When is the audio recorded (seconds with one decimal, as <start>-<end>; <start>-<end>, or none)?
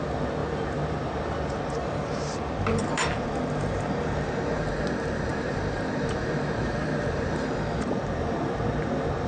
0.0-0.4; 4.7-5.3